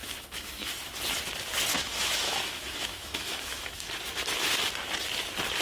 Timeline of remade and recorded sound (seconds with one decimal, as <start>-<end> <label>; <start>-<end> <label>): 0.0-0.7 remade; 0.7-1.7 recorded; 1.7-3.9 remade; 3.9-5.6 recorded